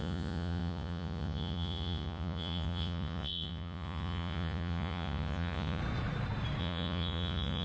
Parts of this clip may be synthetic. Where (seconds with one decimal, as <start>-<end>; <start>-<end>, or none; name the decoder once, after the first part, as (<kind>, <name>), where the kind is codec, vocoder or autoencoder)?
0.0-5.8 (vocoder, Vocos); 6.6-7.6

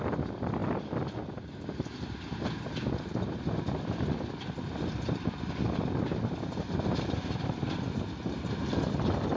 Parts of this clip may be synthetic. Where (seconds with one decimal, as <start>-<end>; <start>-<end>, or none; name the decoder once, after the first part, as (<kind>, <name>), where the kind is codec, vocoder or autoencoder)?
none

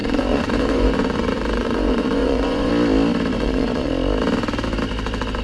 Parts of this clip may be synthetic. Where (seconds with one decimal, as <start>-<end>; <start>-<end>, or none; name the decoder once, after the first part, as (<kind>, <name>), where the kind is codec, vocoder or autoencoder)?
0.0-2.7 (vocoder, Vocos); 3.3-3.9